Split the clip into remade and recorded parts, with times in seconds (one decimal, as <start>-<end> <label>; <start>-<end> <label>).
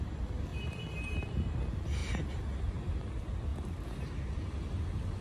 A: 0.0-0.5 recorded; 0.5-1.1 remade; 1.1-3.5 recorded; 3.5-4.1 remade; 4.1-5.2 recorded